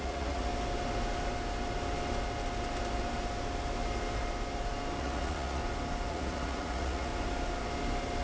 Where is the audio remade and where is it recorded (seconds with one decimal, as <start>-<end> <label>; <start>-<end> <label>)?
0.0-0.5 remade; 0.5-5.0 recorded; 5.0-5.6 remade; 5.6-6.1 recorded; 6.1-7.1 remade; 7.1-8.2 recorded